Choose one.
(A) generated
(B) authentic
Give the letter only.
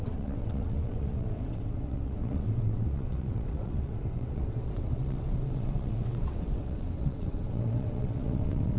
A